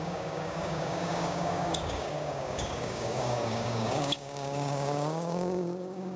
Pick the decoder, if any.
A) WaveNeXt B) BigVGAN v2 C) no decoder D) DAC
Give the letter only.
D